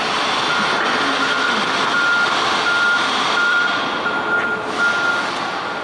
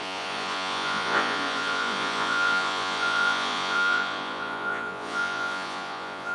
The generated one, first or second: second